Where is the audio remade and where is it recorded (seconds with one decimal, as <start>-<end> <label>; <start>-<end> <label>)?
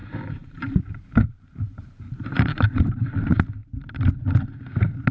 0.0-3.1 remade; 3.1-3.6 recorded; 3.6-4.1 remade; 4.1-5.1 recorded